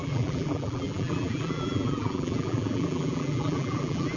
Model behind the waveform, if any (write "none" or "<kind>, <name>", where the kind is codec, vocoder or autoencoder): vocoder, BigVGAN v2